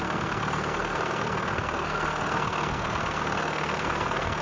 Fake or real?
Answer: fake